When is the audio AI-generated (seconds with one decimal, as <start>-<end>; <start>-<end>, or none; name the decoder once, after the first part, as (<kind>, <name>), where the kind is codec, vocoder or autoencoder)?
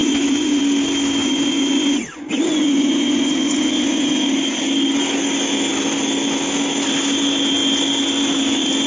0.0-0.6 (vocoder, Vocos); 1.2-4.3